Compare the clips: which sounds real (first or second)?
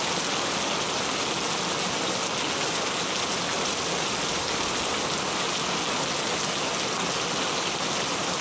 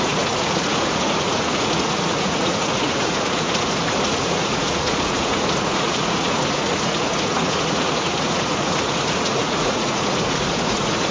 first